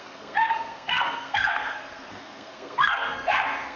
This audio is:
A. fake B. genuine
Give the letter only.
A